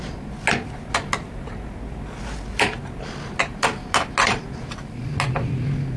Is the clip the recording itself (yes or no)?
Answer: yes